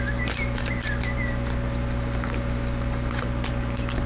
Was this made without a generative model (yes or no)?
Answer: yes